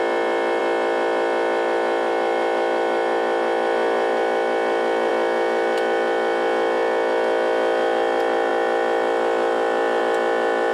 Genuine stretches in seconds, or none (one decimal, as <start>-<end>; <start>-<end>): 0.0-10.7